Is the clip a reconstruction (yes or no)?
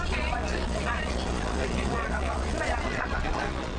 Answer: yes